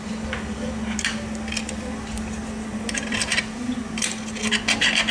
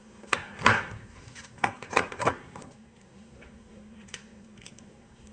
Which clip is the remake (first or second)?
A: second